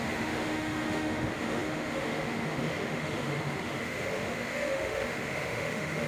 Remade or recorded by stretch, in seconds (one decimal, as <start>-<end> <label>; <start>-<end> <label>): 0.0-6.1 remade